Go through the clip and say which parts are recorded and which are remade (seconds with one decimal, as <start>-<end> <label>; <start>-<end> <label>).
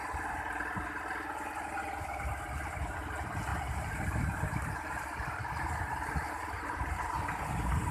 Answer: 0.0-3.5 recorded; 3.5-7.9 remade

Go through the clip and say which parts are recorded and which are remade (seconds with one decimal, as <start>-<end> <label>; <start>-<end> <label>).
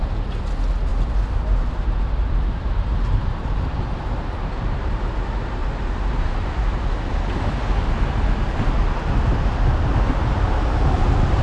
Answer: 0.0-0.9 recorded; 0.9-5.0 remade; 5.0-5.6 recorded; 5.6-7.1 remade; 7.1-11.4 recorded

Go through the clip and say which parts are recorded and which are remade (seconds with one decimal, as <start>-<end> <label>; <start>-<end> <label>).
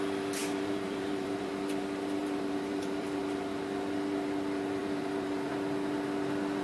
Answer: 0.0-0.4 recorded; 0.4-1.5 remade; 1.5-2.2 recorded; 2.2-3.2 remade; 3.2-4.8 recorded; 4.8-5.5 remade; 5.5-6.6 recorded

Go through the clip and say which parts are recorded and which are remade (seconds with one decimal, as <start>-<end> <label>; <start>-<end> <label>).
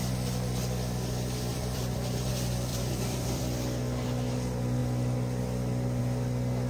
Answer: 0.0-1.5 recorded; 1.5-2.3 remade; 2.3-2.7 recorded; 2.7-3.4 remade; 3.4-6.7 recorded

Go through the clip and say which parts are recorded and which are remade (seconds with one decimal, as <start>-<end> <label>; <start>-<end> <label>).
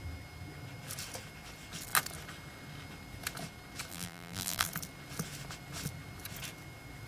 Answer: 0.0-3.9 recorded; 3.9-4.7 remade; 4.7-7.1 recorded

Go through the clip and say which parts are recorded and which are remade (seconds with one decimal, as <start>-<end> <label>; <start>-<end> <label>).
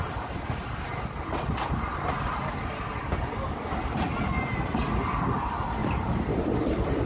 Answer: 0.0-7.1 recorded